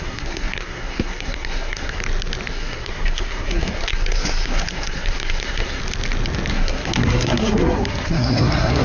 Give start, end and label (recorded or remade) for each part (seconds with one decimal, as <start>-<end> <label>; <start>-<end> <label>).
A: 0.0-2.0 remade; 2.0-2.5 recorded; 2.5-5.8 remade; 5.8-6.5 recorded; 6.5-8.8 remade